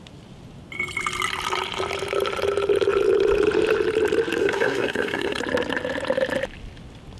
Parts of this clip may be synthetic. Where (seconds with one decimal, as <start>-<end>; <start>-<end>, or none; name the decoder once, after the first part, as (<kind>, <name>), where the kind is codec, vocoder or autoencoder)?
4.4-5.4 (codec, SNAC)